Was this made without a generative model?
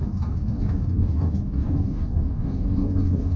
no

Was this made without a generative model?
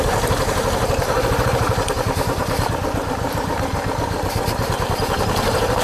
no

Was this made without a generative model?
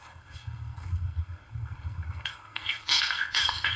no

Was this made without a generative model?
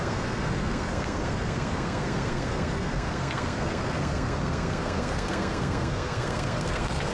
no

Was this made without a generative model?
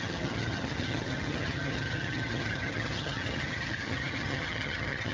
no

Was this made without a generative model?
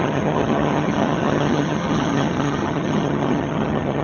no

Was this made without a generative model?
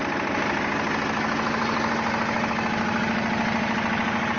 yes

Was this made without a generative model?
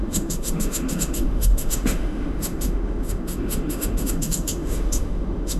no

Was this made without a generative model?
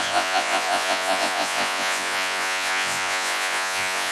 no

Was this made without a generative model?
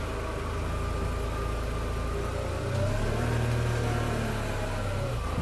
yes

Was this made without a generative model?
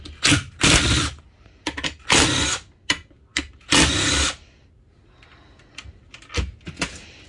yes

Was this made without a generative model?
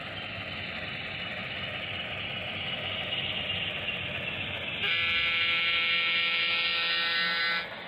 yes